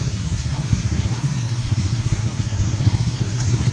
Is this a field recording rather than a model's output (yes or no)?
no